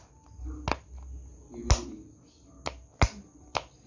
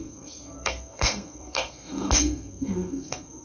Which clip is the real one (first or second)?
first